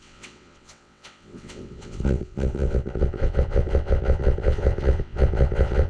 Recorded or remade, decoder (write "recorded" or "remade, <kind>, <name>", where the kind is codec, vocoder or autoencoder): remade, vocoder, WaveNeXt